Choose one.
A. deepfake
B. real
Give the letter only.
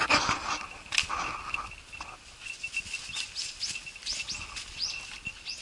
B